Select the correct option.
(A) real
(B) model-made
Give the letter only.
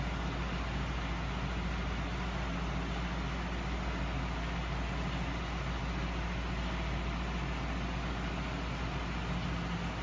A